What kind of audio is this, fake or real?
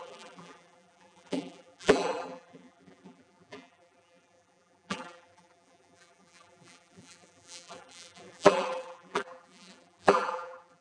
fake